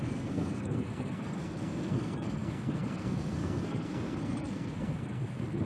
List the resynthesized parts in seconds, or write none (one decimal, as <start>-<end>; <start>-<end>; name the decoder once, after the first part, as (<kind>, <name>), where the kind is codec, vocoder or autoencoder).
0.0-5.7 (codec, SNAC)